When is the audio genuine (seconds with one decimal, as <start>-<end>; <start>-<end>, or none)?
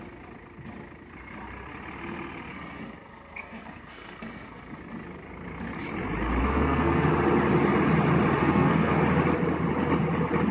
0.0-2.5; 4.8-6.4; 7.1-8.4; 9.0-10.5